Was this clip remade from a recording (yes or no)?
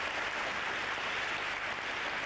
no